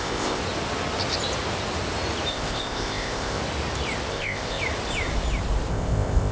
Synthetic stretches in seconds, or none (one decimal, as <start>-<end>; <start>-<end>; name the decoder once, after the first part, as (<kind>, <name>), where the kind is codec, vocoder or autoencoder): 0.0-0.4 (codec, ZipCodec); 2.3-3.4; 4.1-4.6; 5.7-6.3

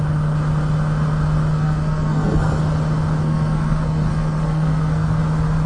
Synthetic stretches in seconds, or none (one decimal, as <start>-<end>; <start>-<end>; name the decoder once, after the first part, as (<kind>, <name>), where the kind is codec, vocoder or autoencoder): 1.5-2.6 (codec, SNAC); 3.2-5.2

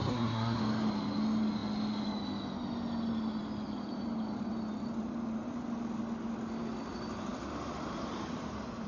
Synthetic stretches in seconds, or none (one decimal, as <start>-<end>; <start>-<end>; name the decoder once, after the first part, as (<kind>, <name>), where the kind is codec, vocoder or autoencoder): 0.0-0.6 (codec, SNAC)

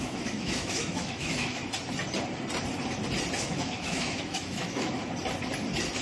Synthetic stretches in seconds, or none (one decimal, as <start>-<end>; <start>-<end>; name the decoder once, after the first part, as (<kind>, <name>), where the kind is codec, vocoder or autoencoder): 0.0-1.6 (autoencoder, DAC-VAE); 3.4-5.0

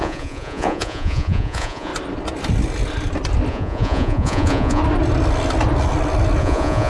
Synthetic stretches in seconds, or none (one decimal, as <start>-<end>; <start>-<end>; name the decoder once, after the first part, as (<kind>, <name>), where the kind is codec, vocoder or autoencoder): 0.0-1.9 (vocoder, Vocos); 3.5-4.8; 6.4-6.9

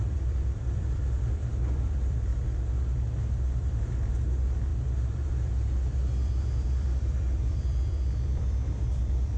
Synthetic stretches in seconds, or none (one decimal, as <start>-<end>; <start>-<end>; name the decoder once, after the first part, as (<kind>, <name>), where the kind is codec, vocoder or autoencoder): 0.0-2.3 (vocoder, BigVGAN v2); 3.3-9.4

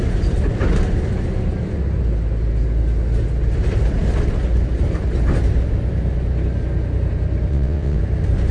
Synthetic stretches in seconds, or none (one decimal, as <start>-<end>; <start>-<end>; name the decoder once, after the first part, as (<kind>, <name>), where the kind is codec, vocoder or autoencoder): 7.5-8.0 (vocoder, WaveNeXt)

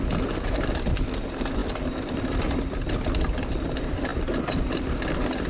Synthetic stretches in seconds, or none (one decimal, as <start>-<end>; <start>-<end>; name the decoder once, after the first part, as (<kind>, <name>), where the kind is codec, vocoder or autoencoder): none